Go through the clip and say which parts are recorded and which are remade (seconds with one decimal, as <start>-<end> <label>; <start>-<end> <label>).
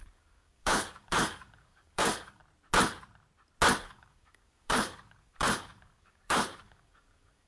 0.0-2.4 remade; 2.4-3.8 recorded; 3.8-7.5 remade